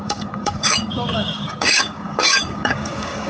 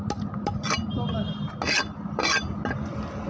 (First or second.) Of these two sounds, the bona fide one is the second